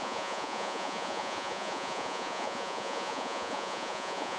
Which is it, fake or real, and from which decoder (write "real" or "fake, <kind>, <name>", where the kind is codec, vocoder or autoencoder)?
fake, vocoder, Vocos